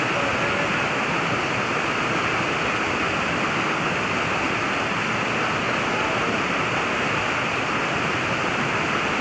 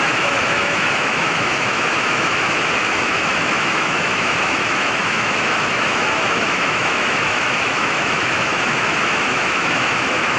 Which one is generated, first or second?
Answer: second